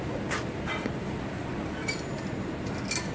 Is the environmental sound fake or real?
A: real